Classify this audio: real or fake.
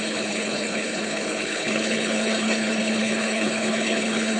fake